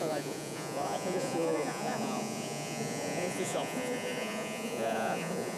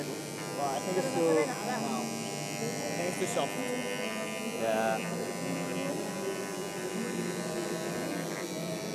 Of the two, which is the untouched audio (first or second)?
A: second